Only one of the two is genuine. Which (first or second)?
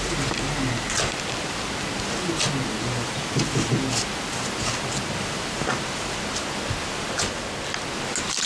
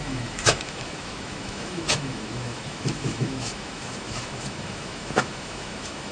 first